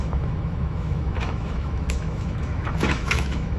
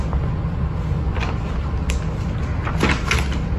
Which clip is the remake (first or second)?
first